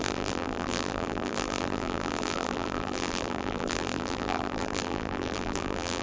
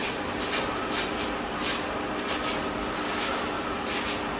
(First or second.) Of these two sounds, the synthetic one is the first